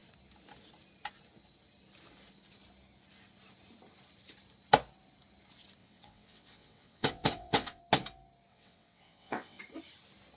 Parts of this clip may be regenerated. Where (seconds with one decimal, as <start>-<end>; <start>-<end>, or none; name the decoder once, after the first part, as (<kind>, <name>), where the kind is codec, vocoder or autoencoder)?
5.8-7.8 (vocoder, WaveNeXt); 8.5-9.6